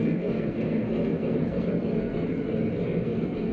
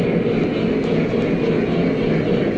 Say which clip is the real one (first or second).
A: second